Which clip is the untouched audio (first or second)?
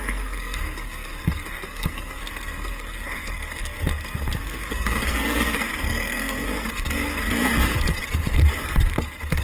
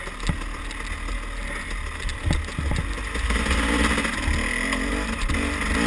second